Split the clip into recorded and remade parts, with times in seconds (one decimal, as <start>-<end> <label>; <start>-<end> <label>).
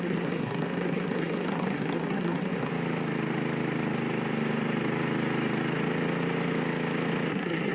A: 0.0-2.7 remade; 2.7-7.3 recorded; 7.3-7.7 remade